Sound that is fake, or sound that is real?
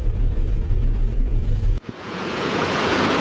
fake